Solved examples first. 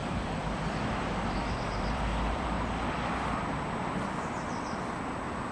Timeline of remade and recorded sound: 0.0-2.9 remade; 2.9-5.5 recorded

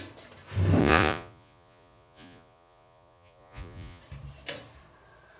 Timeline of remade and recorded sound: 0.0-0.8 recorded; 0.8-4.0 remade; 4.0-5.4 recorded

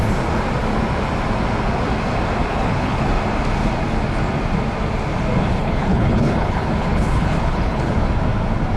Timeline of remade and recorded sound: 0.0-2.5 recorded; 2.5-3.1 remade; 3.1-5.6 recorded; 5.6-7.9 remade; 7.9-8.8 recorded